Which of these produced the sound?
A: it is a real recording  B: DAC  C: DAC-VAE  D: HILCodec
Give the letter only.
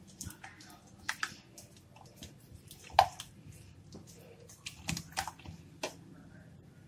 A